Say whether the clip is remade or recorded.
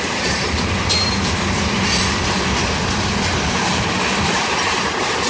recorded